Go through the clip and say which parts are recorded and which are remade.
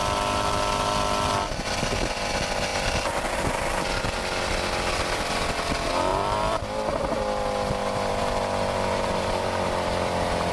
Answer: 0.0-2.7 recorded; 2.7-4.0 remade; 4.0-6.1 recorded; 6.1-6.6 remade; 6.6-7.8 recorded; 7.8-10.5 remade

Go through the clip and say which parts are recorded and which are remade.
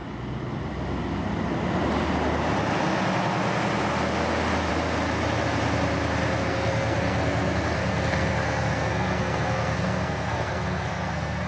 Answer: 0.0-6.4 recorded; 6.4-11.5 remade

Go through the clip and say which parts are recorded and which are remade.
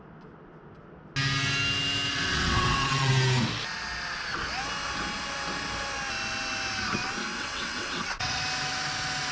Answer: 0.0-2.1 recorded; 2.1-3.1 remade; 3.1-7.3 recorded; 7.3-8.4 remade; 8.4-9.3 recorded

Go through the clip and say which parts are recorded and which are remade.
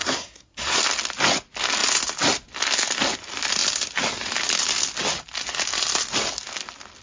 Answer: 0.0-0.8 remade; 0.8-7.0 recorded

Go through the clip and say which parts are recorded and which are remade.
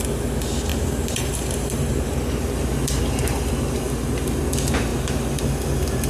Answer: 0.0-0.7 recorded; 0.7-4.4 remade; 4.4-4.9 recorded; 4.9-5.4 remade; 5.4-6.1 recorded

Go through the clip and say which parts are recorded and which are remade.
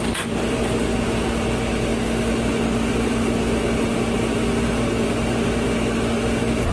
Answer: 0.0-6.7 recorded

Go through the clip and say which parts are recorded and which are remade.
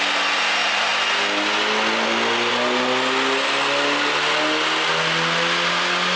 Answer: 0.0-6.2 recorded